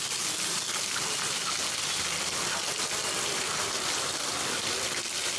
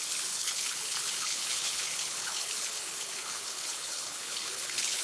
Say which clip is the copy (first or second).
second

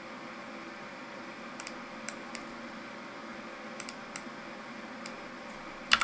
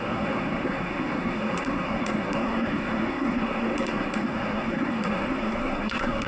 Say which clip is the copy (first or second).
second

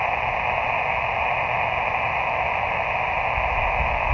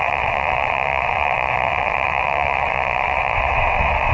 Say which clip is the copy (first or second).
second